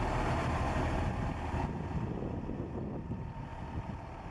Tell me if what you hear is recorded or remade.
recorded